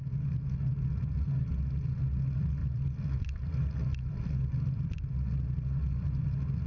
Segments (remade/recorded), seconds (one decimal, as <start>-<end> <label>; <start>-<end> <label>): 0.0-0.7 recorded; 0.7-1.4 remade; 1.4-2.6 recorded; 2.6-5.1 remade; 5.1-6.7 recorded